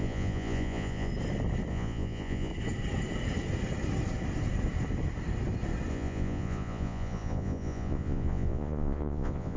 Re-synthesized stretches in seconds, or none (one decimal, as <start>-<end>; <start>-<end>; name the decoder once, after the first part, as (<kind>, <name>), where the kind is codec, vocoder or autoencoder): 0.0-1.1 (vocoder, Vocos); 1.7-2.5; 5.9-9.6